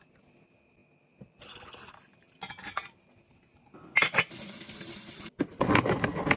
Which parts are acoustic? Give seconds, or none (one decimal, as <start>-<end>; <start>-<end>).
0.0-6.4